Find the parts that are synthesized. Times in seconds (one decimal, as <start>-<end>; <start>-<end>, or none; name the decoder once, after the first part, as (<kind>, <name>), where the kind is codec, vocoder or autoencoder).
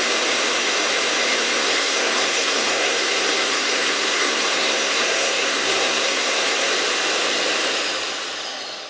1.6-6.7 (codec, SNAC)